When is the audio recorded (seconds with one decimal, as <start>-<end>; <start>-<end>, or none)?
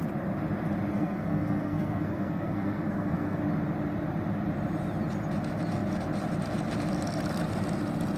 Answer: 0.0-0.9; 3.4-8.2